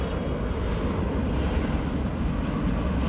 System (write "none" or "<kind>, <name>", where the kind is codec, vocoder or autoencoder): none